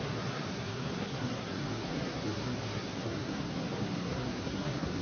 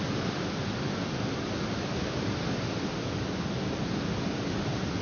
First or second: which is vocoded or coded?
first